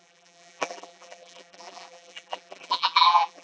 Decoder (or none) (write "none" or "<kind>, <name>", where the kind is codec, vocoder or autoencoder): vocoder, BigVGAN v2